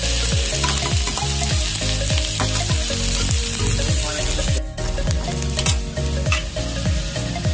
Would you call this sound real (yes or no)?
yes